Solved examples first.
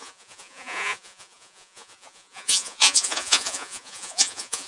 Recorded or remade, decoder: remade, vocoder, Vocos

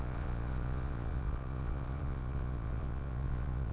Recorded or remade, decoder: remade, vocoder, Vocos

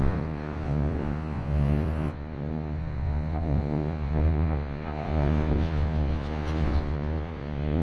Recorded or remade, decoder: remade, vocoder, Vocos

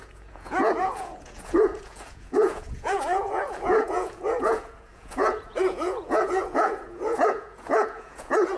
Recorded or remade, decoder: remade, vocoder, Vocos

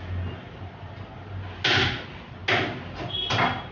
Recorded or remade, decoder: recorded